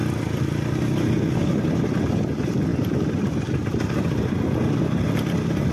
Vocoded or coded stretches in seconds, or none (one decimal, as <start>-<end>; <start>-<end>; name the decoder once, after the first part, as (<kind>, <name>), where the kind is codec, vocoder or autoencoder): 0.0-2.1 (vocoder, BigVGAN v2)